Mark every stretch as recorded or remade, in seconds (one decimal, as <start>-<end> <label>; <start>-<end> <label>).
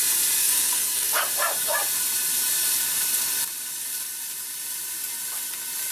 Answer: 0.0-0.4 recorded; 0.4-1.2 remade; 1.2-5.9 recorded